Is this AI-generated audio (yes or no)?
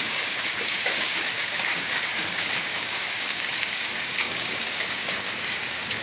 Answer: yes